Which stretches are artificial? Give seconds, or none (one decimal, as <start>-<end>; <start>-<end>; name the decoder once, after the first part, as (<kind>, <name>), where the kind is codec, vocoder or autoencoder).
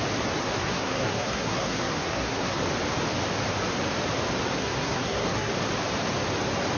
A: 0.4-2.6 (codec, SNAC); 4.6-5.5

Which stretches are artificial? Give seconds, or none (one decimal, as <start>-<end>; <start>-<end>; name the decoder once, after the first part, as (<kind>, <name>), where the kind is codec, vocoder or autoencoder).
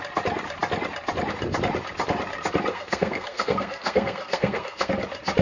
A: 2.7-4.9 (codec, SNAC)